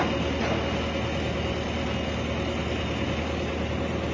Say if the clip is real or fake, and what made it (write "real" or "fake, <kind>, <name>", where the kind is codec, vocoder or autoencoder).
real